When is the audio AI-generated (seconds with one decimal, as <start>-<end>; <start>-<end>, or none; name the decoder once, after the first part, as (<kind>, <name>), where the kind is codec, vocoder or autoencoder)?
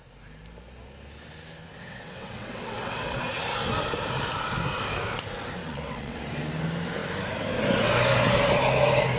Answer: 1.7-3.2 (vocoder, WaveNeXt); 5.6-6.2